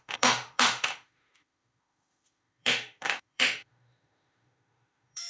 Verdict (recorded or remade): remade